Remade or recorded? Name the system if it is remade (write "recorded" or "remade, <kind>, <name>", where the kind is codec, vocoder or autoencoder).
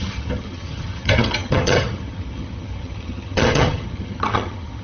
remade, vocoder, HiFi-GAN